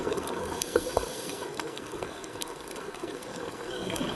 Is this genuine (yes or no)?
no